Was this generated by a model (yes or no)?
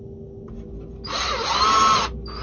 no